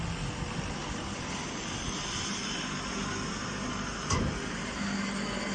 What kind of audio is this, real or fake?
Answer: real